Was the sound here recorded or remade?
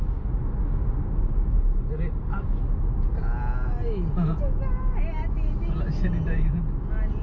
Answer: recorded